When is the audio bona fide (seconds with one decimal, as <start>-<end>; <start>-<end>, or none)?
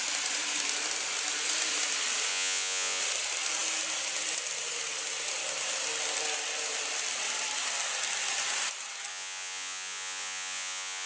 0.0-2.3; 3.0-9.1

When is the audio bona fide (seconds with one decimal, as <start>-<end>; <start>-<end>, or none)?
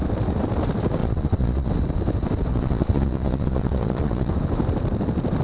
0.0-1.0; 1.7-2.5; 4.3-5.4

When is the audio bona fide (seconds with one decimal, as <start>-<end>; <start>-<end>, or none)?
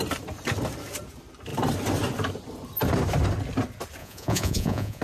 0.0-4.0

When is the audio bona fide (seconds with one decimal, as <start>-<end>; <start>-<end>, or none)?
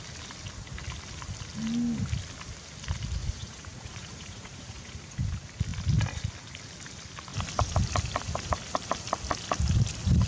0.0-3.2; 5.2-10.3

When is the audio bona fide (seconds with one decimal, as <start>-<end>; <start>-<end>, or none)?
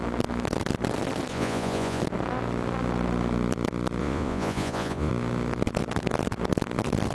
0.0-1.3; 2.0-4.0; 5.1-7.1